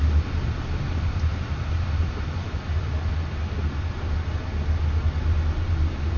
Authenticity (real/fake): real